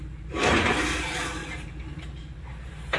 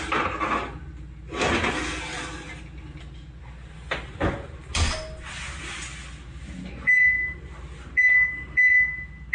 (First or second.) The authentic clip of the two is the second